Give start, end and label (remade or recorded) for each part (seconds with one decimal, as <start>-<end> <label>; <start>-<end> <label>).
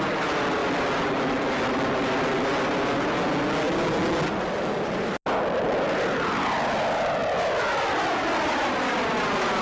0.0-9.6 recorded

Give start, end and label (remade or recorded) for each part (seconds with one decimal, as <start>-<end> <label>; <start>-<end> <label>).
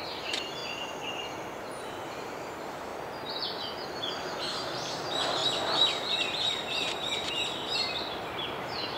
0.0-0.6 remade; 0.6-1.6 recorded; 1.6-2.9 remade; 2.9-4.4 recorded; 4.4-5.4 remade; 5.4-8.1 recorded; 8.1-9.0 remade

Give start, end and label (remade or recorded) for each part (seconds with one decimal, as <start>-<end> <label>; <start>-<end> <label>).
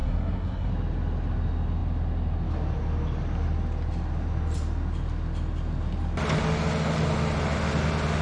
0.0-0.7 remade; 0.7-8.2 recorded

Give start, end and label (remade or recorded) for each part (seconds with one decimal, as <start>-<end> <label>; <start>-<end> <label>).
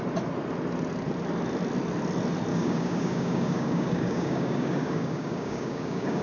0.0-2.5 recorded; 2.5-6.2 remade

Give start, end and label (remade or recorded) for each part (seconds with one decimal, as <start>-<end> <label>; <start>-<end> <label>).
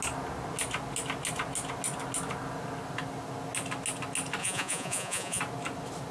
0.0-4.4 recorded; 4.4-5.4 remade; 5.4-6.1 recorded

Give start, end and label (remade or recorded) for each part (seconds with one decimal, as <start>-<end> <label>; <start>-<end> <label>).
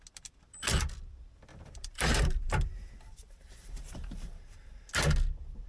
0.0-1.5 recorded; 1.5-4.9 remade; 4.9-5.7 recorded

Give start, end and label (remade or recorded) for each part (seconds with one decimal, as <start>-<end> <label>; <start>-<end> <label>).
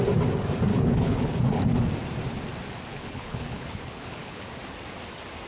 0.0-0.7 recorded; 0.7-1.6 remade; 1.6-2.9 recorded; 2.9-4.5 remade; 4.5-5.5 recorded